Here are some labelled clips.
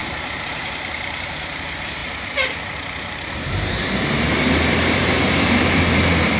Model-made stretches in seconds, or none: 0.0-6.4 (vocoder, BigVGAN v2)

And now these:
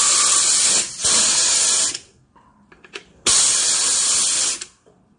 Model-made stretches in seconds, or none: none

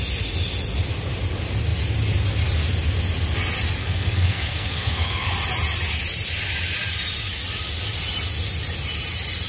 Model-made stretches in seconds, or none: 3.8-5.3 (codec, SNAC)

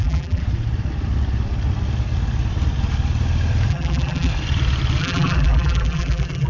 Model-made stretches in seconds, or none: 0.0-0.4 (vocoder, BigVGAN v2); 3.7-4.3; 5.0-6.5

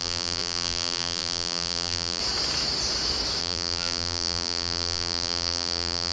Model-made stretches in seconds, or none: 0.0-2.2 (vocoder, BigVGAN v2); 3.4-6.1